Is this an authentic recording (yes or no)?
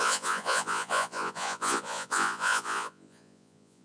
no